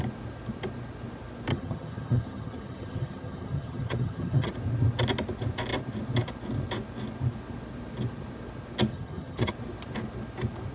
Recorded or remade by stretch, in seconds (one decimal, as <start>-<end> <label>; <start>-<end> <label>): 0.0-1.5 recorded; 1.5-4.5 remade; 4.5-8.9 recorded; 8.9-9.5 remade; 9.5-10.7 recorded